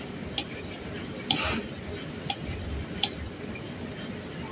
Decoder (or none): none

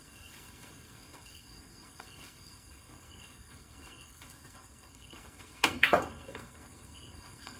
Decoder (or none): codec, SNAC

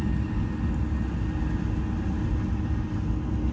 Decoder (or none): none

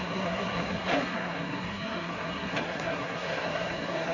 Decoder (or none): codec, SNAC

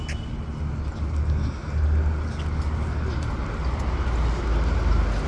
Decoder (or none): none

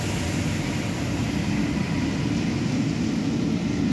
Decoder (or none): none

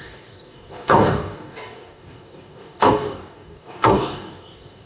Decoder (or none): codec, DAC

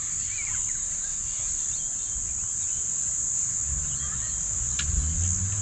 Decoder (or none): none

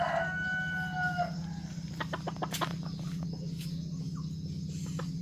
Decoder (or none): none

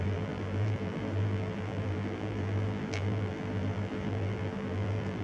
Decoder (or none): vocoder, BigVGAN v2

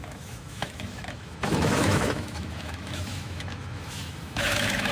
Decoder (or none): autoencoder, DAC-VAE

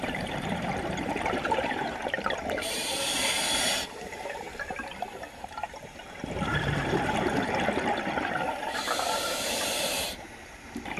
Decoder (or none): vocoder, BigVGAN v2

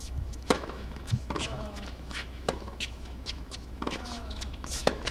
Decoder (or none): autoencoder, DAC-VAE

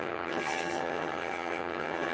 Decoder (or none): vocoder, HiFi-GAN